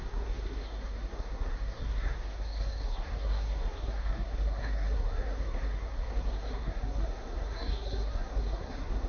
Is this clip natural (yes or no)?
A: no